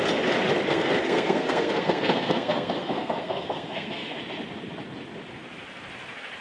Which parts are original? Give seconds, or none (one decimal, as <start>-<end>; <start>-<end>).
0.0-0.7; 4.2-6.4